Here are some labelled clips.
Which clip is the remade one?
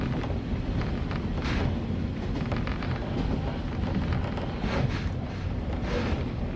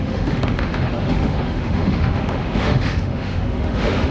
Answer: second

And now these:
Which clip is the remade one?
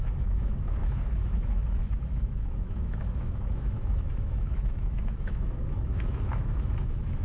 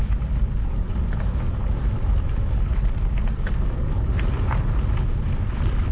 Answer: first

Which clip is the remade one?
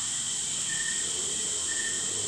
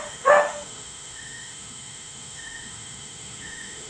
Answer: second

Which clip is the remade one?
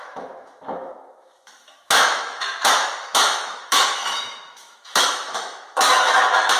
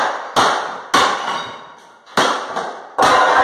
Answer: first